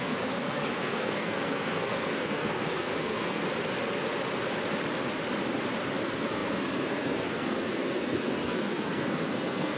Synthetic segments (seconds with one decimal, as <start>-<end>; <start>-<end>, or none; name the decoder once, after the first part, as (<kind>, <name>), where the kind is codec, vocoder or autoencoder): 0.0-3.4 (codec, SNAC); 6.0-9.8